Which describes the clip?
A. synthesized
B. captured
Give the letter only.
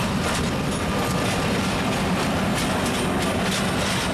B